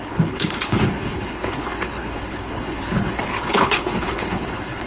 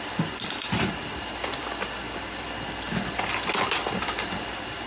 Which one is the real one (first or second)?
second